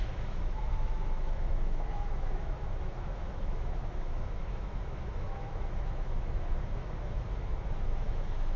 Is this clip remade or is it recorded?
remade